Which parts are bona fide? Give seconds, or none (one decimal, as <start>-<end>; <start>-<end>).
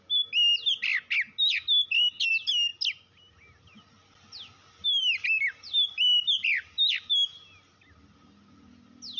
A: 0.0-9.2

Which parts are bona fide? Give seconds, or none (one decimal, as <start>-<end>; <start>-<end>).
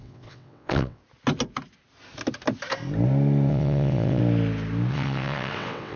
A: 1.0-3.5; 4.2-4.9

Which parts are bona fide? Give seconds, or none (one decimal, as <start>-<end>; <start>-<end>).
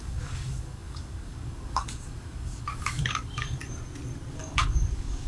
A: 3.6-4.4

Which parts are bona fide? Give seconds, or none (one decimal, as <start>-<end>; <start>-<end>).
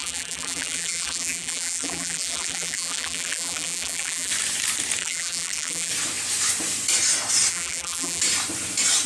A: 4.3-5.0; 5.9-7.5; 8.2-9.1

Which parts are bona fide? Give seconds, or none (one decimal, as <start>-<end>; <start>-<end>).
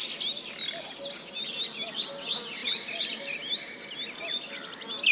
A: 0.0-5.1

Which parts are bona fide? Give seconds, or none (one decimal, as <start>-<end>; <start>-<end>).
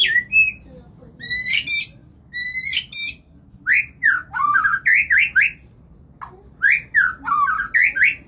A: 0.0-8.3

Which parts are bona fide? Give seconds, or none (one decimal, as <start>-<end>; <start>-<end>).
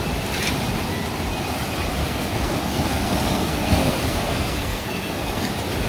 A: 0.0-2.0; 5.5-5.9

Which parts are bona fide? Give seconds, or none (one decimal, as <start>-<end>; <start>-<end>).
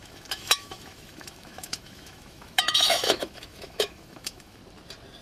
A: 4.6-5.2